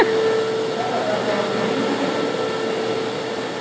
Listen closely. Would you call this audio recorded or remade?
recorded